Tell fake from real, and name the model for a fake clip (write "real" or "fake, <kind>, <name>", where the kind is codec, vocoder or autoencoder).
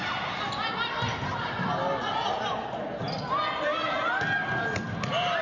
real